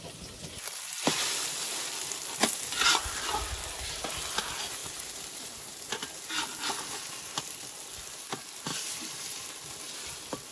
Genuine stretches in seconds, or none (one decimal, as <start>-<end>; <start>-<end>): 0.0-4.8; 6.3-8.7; 9.5-10.5